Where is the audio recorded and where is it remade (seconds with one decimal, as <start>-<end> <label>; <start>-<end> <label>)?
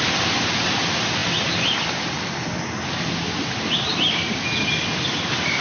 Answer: 0.0-5.6 recorded